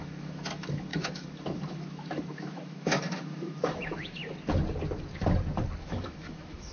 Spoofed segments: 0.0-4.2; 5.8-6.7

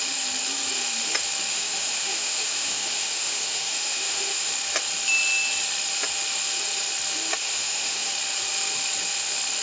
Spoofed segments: 1.5-4.5; 7.4-8.1

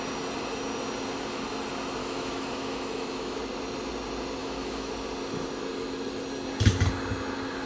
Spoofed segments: 2.0-3.4; 4.4-4.9

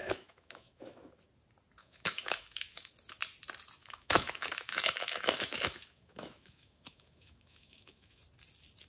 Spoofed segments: 0.0-1.2; 1.8-2.9; 3.8-8.2